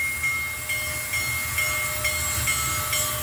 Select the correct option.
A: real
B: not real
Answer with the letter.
A